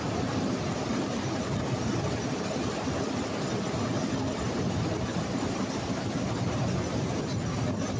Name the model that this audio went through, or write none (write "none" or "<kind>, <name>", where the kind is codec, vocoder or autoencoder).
none